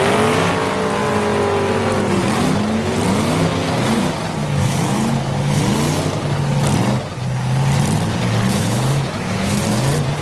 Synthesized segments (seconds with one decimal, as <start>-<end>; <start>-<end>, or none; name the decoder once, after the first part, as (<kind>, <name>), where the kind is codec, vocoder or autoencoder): 4.4-5.6 (autoencoder, DAC-VAE); 8.5-9.6